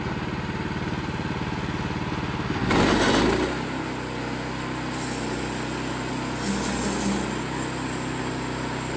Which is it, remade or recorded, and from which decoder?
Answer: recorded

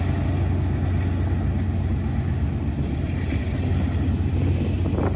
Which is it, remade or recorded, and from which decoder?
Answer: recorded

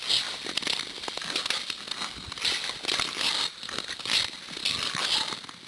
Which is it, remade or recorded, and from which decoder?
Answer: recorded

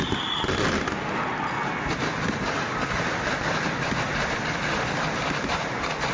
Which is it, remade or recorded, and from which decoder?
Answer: recorded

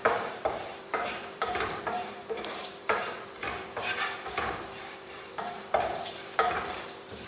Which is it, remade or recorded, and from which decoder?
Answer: remade, vocoder, BigVGAN v2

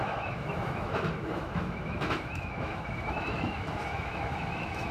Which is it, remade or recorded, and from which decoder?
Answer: remade, autoencoder, DAC-VAE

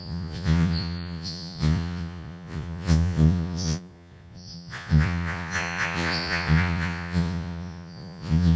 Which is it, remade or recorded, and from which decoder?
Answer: remade, vocoder, Vocos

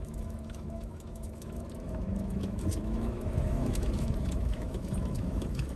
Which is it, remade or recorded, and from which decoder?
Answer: remade, autoencoder, DAC-VAE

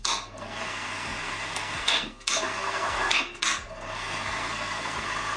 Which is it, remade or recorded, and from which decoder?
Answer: remade, codec, SNAC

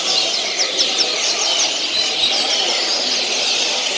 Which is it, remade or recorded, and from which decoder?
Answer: recorded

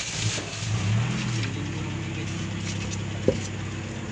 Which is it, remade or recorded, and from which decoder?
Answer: recorded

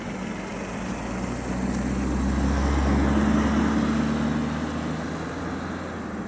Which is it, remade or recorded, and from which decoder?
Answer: recorded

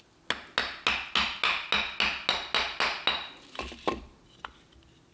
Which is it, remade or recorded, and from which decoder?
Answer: recorded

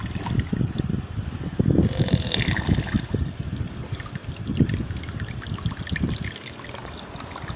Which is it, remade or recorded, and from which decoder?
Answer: recorded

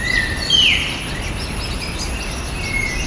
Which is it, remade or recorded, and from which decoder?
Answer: recorded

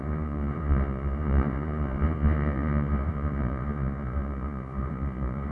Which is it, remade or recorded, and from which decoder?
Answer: remade, vocoder, Vocos